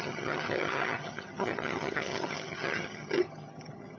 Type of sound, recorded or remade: remade